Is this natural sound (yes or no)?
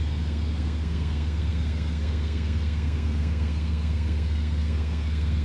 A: no